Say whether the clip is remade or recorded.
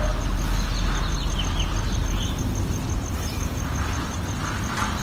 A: recorded